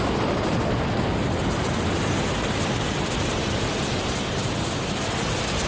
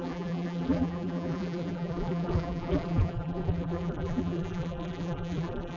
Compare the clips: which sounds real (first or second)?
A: first